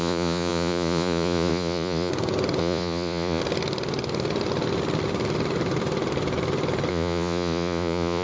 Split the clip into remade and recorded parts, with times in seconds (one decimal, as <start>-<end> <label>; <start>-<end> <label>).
0.0-2.1 remade; 2.1-2.6 recorded; 2.6-3.4 remade; 3.4-6.9 recorded; 6.9-8.2 remade